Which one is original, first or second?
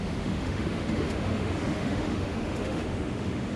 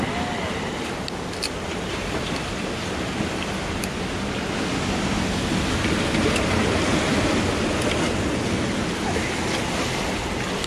second